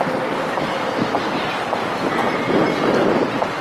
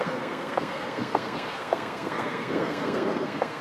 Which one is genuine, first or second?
first